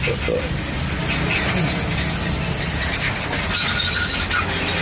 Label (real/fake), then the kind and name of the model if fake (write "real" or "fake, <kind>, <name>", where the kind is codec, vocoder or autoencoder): real